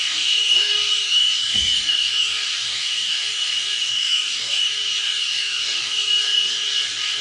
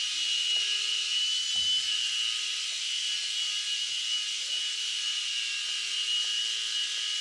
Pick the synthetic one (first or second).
first